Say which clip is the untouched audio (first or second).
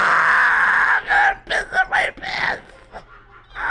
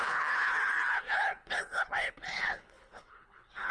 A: first